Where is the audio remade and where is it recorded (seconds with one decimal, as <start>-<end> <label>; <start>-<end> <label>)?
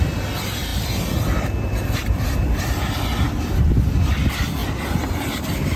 0.0-5.8 recorded